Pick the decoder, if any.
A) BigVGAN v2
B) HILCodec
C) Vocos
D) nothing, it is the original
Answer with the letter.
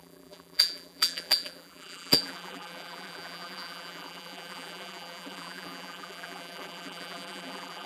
A